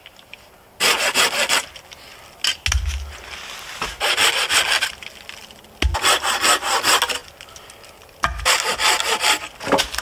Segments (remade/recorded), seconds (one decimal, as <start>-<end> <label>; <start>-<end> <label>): 0.0-10.0 recorded